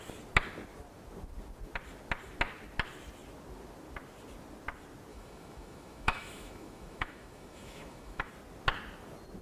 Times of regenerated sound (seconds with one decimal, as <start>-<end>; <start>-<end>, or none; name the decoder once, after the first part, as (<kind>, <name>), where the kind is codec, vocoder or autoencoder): 5.1-8.3 (autoencoder, DAC-VAE)